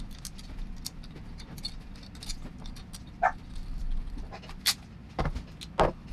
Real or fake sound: real